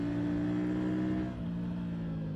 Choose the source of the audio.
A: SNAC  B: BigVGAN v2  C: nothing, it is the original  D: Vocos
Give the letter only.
C